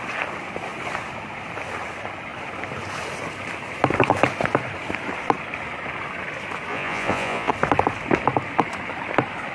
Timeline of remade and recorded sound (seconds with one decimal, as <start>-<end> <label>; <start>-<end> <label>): 0.0-6.7 recorded; 6.7-7.5 remade; 7.5-9.5 recorded